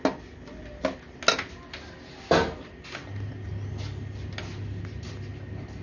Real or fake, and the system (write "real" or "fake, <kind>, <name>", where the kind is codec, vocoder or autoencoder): real